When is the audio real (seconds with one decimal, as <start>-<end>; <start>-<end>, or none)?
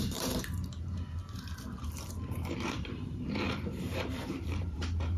none